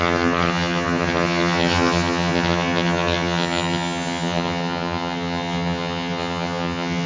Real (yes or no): no